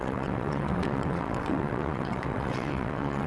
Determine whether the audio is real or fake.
fake